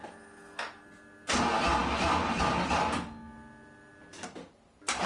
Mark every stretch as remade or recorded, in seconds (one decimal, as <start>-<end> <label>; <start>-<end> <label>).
0.0-5.1 recorded